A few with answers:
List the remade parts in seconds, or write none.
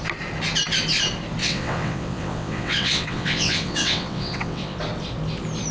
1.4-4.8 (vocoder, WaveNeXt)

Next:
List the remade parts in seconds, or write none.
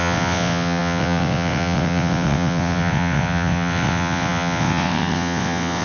0.0-5.8 (vocoder, WaveNeXt)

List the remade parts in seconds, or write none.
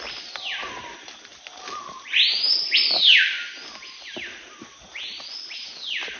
none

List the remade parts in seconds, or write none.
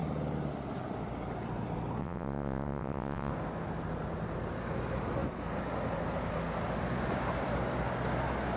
2.0-3.3 (vocoder, WaveNeXt)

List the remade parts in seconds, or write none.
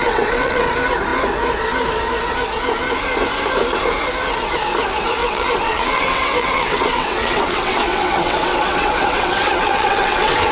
0.0-0.7 (vocoder, WaveNeXt); 5.2-10.5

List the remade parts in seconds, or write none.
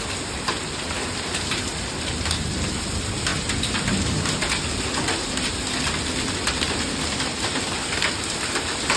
none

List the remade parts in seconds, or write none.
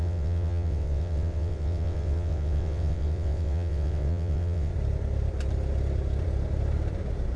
0.0-4.7 (vocoder, WaveNeXt)